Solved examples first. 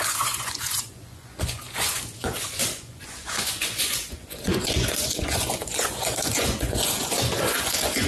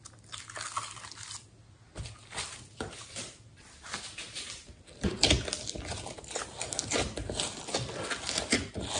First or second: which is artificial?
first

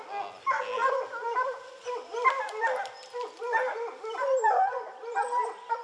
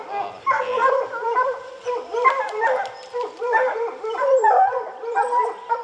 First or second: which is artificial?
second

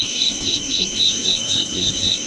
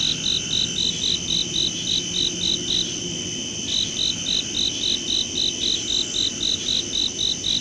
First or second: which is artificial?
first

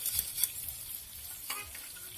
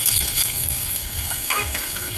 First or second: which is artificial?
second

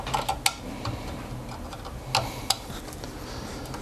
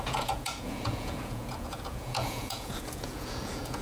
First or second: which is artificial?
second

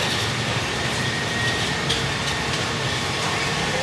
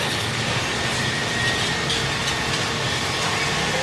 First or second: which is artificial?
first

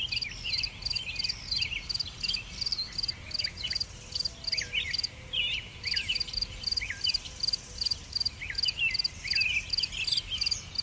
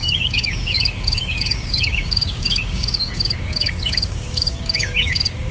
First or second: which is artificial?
second